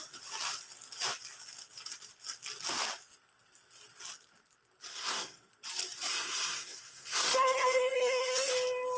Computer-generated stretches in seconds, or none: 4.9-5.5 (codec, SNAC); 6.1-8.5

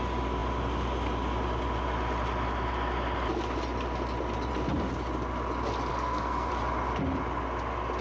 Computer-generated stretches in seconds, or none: 5.9-6.5 (codec, SNAC)

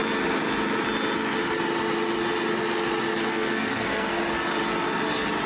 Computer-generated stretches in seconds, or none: 3.3-4.2 (codec, SNAC)

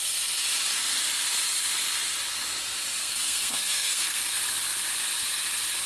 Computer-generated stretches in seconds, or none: 3.0-4.4 (codec, SNAC)

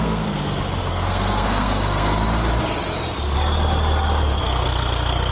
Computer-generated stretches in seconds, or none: 0.0-0.4 (codec, SNAC); 0.9-2.2; 4.4-5.3

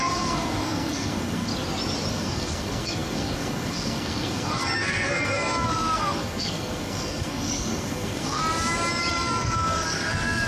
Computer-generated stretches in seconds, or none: 0.0-1.5 (codec, SNAC); 2.1-8.4; 9.1-10.5

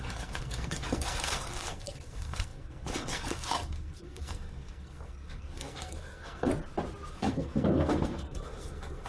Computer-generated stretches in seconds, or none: 0.0-6.5 (codec, SNAC); 7.1-9.1